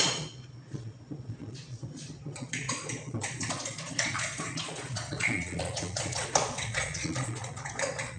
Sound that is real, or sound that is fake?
fake